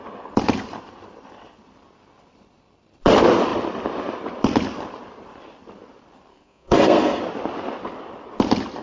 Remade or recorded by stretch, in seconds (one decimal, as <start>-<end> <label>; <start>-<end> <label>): 0.0-6.3 recorded; 6.3-7.2 remade; 7.2-8.8 recorded